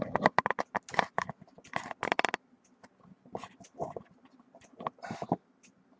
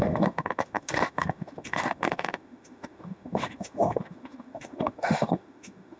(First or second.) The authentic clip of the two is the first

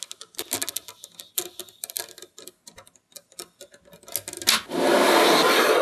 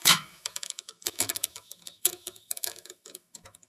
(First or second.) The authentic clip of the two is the first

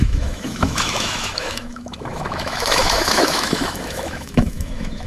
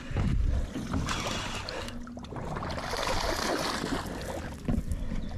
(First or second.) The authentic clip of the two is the second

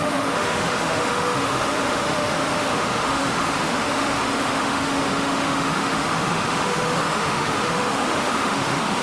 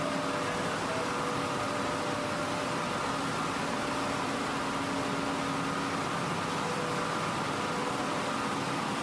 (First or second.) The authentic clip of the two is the second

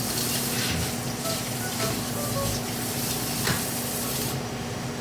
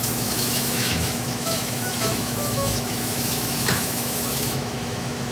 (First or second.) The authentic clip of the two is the first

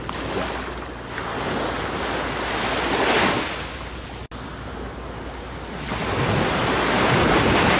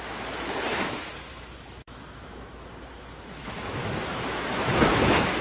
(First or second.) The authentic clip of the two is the first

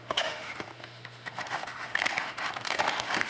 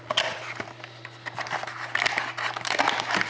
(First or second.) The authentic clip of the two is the second